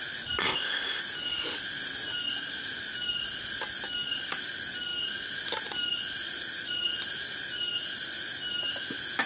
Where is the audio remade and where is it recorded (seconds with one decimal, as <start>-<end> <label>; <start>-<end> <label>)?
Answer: 0.0-0.4 recorded; 0.4-1.0 remade; 1.0-9.3 recorded